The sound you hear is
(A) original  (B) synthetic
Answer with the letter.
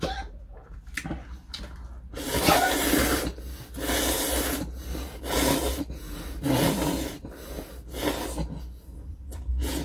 A